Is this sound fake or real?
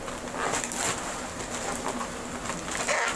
real